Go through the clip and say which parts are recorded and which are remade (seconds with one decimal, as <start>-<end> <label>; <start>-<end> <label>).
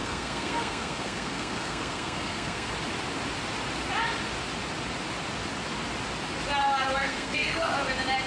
0.0-2.7 remade; 2.7-7.0 recorded; 7.0-7.7 remade; 7.7-8.3 recorded